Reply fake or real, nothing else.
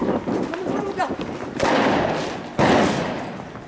real